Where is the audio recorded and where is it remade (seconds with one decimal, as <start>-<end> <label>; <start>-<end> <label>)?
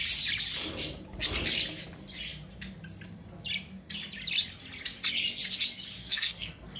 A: 0.0-6.0 recorded; 6.0-6.8 remade